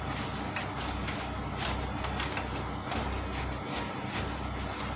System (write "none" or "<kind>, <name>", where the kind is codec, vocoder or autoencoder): none